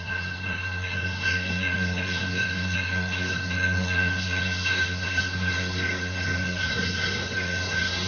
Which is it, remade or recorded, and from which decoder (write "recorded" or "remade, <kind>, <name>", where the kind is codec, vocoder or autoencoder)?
remade, codec, SNAC